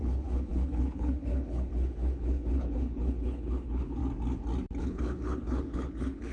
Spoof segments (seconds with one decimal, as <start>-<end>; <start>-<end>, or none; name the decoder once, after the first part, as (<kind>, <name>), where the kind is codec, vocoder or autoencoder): 0.0-4.0 (codec, HILCodec); 4.8-6.3